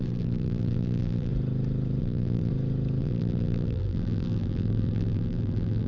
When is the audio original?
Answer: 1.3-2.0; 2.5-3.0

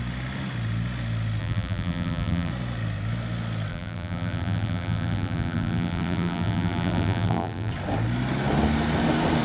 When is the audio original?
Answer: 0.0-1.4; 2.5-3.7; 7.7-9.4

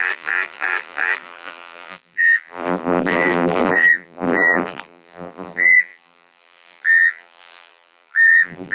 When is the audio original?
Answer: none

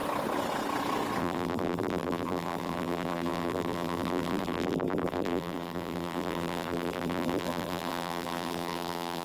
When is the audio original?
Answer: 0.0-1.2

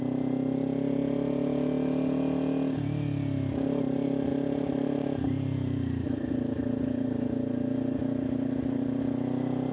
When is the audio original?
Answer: 0.0-4.3; 9.0-9.7

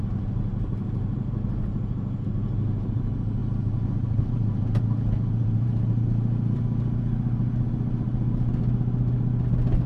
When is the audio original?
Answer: 0.0-3.4; 6.6-9.9

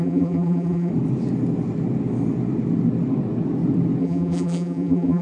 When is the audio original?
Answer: 0.9-4.0